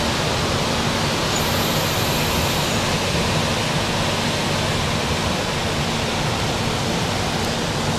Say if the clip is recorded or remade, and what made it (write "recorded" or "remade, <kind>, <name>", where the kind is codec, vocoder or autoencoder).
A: recorded